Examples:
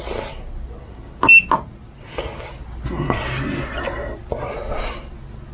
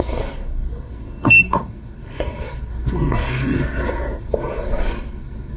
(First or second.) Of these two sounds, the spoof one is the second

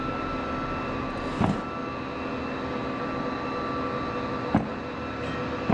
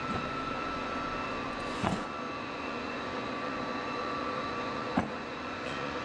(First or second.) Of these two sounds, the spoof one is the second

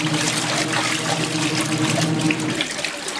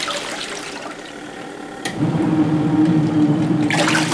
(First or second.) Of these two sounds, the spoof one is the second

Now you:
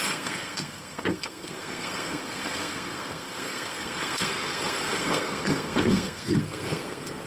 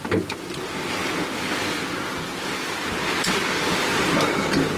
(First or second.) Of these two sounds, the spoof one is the first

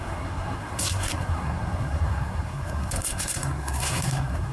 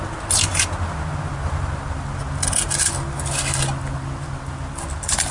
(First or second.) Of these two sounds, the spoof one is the first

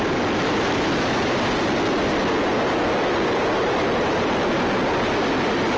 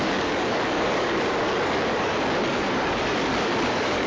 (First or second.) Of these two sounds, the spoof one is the second